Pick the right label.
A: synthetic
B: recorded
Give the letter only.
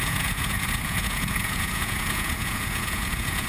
A